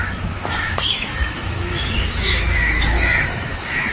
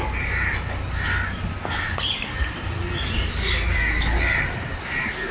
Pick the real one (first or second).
second